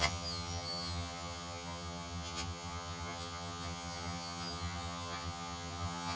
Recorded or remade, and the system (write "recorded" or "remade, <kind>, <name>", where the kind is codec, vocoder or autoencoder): remade, vocoder, HiFi-GAN